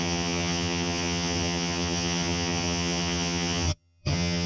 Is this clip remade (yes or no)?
yes